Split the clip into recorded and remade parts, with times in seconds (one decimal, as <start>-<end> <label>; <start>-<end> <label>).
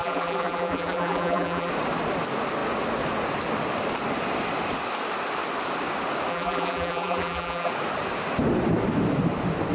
0.0-1.7 remade; 1.7-6.3 recorded; 6.3-7.7 remade; 7.7-9.7 recorded